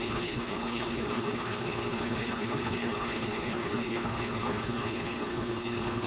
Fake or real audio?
fake